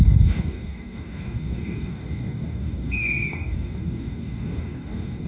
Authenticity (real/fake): fake